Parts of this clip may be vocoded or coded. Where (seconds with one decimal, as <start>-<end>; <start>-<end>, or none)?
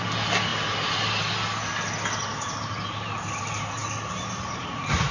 none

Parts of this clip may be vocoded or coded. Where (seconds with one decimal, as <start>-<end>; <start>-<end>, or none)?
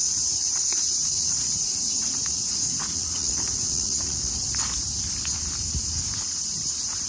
0.0-4.3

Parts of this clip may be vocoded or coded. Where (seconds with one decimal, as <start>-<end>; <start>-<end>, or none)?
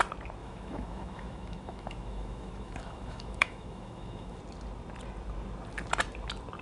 0.4-4.4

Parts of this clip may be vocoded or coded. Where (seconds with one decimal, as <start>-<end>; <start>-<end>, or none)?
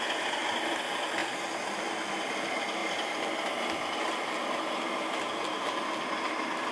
none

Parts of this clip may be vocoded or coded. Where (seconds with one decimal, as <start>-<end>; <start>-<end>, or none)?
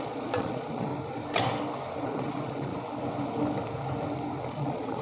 0.0-0.9; 2.0-2.7; 4.5-5.0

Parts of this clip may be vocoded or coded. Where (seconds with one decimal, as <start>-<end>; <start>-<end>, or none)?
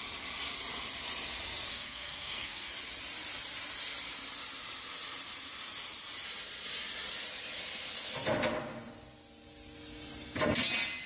1.7-2.7